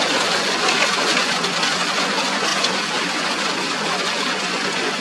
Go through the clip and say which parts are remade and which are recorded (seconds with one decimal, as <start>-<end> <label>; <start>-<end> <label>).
0.0-5.0 remade

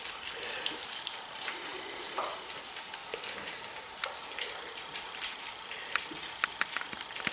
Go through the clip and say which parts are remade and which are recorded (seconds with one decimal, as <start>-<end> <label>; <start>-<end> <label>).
0.0-7.3 recorded

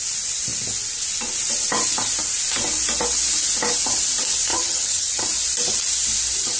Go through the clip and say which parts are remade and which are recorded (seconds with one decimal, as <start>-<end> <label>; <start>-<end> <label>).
0.0-4.5 recorded; 4.5-5.2 remade; 5.2-6.6 recorded

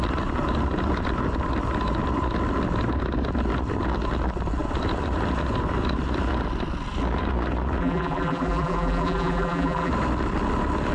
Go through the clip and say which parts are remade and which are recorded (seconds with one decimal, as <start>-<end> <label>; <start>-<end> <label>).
0.0-7.8 recorded; 7.8-9.9 remade; 9.9-10.9 recorded

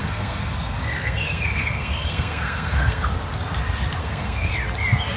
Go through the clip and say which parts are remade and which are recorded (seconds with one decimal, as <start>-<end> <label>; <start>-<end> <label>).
0.0-3.1 remade; 3.1-4.0 recorded; 4.0-4.5 remade; 4.5-5.2 recorded

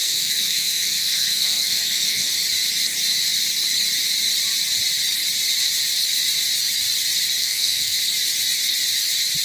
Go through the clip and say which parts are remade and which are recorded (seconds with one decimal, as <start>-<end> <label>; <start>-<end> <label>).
0.0-2.3 remade; 2.3-7.4 recorded; 7.4-8.0 remade; 8.0-9.4 recorded